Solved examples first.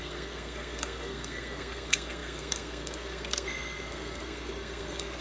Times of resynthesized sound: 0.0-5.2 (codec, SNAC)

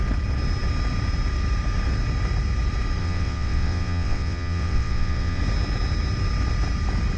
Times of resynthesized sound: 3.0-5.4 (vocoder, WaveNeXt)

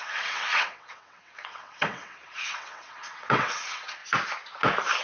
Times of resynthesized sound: 0.0-4.0 (vocoder, WaveNeXt)

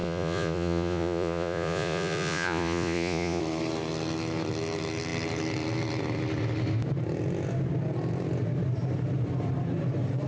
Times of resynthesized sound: 0.0-3.4 (vocoder, Vocos)

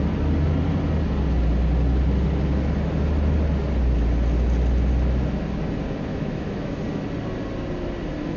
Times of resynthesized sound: 6.1-6.8 (autoencoder, DAC-VAE)